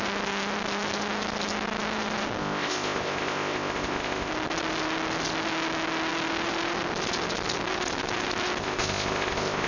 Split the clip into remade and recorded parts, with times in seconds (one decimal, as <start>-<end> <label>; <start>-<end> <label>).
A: 0.0-2.4 recorded; 2.4-4.3 remade; 4.3-8.6 recorded; 8.6-9.7 remade